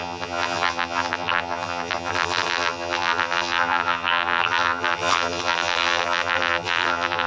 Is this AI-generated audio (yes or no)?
yes